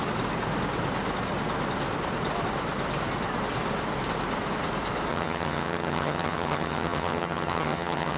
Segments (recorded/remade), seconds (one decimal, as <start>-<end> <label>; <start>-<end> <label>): 0.0-5.1 recorded; 5.1-8.2 remade